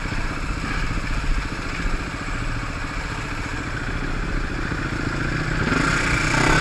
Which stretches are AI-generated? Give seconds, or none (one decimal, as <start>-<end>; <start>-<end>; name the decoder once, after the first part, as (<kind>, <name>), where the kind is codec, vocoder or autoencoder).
none